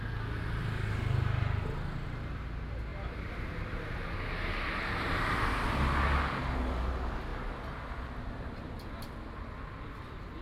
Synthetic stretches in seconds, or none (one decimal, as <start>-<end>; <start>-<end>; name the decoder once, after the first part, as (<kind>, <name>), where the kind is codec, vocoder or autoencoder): 2.9-3.9 (vocoder, BigVGAN v2)